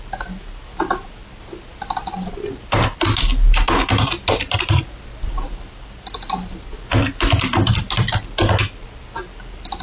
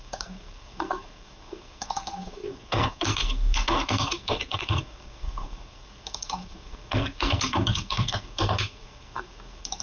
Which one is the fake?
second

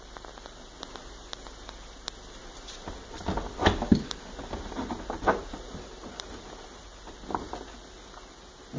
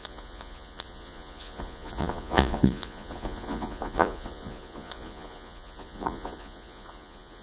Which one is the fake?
second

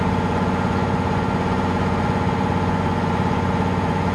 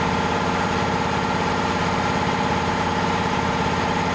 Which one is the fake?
first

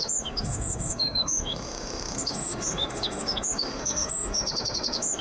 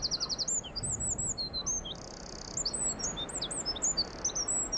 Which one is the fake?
first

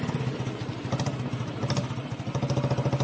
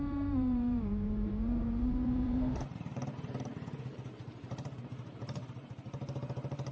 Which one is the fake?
second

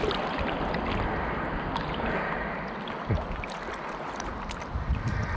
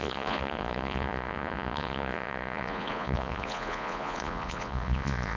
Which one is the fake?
second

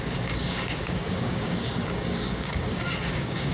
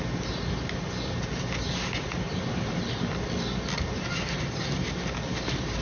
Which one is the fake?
first